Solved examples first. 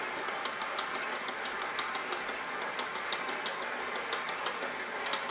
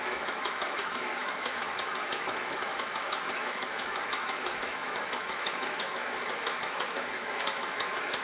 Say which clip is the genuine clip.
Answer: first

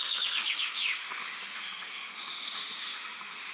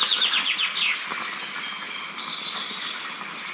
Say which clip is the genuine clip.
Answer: second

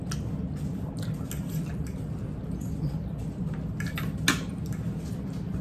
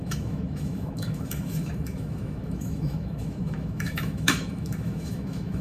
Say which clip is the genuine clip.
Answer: first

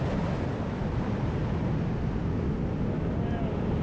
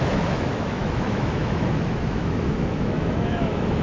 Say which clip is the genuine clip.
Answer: first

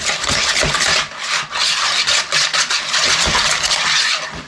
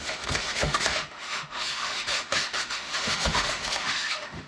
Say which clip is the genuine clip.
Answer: first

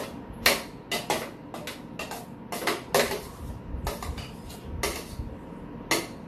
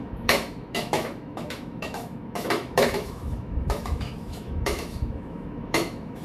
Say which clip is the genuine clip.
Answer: first